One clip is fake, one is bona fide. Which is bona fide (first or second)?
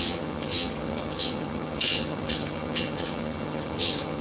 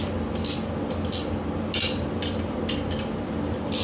second